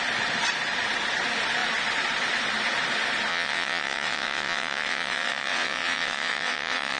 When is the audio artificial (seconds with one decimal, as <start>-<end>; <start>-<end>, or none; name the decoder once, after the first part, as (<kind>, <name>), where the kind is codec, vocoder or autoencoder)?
3.3-7.0 (vocoder, WaveNeXt)

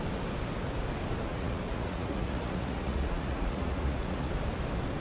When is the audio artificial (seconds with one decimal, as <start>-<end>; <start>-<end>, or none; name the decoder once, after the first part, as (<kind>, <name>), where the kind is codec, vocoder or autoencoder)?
1.3-4.3 (vocoder, Vocos)